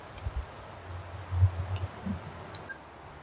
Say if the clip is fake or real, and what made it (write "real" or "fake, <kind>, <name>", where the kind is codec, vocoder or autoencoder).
real